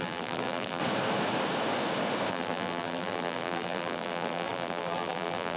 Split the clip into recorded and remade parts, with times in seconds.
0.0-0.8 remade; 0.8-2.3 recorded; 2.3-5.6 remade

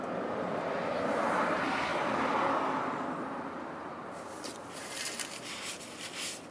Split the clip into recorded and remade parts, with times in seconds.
0.0-1.9 recorded; 1.9-5.8 remade; 5.8-6.5 recorded

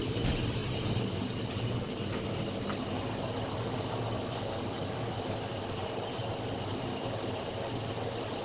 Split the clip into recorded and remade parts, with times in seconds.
0.0-8.4 recorded